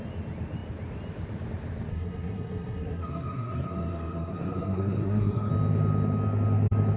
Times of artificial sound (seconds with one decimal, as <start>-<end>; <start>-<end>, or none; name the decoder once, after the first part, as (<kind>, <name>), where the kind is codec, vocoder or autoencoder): 1.9-5.5 (codec, SNAC)